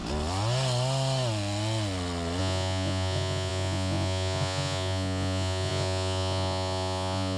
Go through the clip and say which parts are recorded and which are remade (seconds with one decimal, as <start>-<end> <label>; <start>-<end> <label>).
0.0-2.4 recorded; 2.4-7.4 remade